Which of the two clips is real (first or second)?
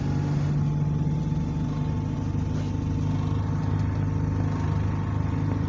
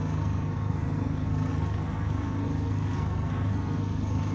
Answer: first